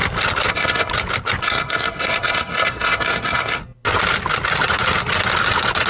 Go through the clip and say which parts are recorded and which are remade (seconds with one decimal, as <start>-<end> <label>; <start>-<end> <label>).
0.0-0.5 recorded; 0.5-0.9 remade; 0.9-1.4 recorded; 1.4-3.6 remade; 3.6-5.9 recorded